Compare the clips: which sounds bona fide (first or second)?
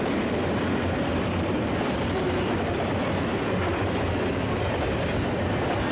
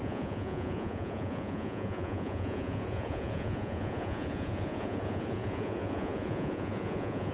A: first